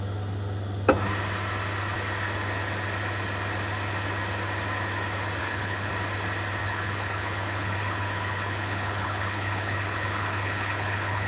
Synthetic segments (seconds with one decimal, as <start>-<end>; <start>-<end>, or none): 5.4-5.9; 6.6-11.3